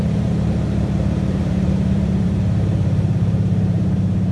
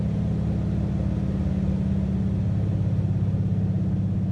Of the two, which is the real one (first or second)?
second